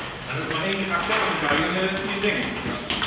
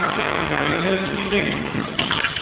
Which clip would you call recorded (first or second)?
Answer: first